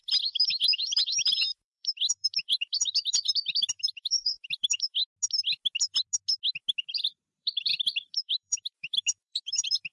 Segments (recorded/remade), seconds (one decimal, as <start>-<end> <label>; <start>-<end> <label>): 0.0-5.0 remade; 5.0-6.9 recorded; 6.9-9.9 remade